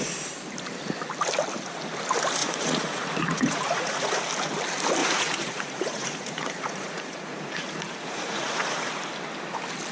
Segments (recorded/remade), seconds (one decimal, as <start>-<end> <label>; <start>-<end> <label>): 0.0-2.4 recorded; 2.4-4.2 remade; 4.2-5.0 recorded; 5.0-8.9 remade; 8.9-9.9 recorded